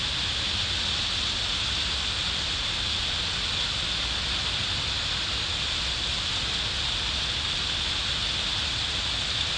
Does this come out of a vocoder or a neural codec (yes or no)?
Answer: no